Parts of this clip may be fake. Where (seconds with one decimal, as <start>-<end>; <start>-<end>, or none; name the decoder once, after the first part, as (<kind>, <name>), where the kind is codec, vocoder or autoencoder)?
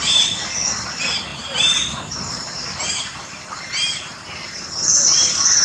1.3-4.7 (vocoder, BigVGAN v2)